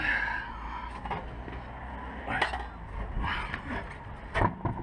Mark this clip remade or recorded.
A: recorded